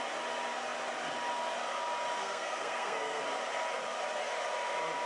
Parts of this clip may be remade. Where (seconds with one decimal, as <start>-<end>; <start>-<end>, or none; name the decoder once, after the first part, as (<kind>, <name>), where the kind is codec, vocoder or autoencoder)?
2.2-3.2 (codec, SNAC)